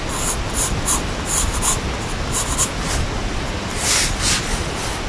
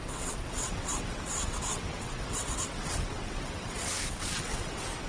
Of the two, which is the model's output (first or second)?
second